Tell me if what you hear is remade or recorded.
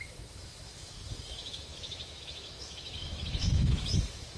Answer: remade